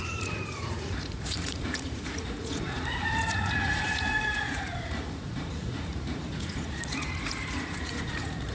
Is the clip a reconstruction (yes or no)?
yes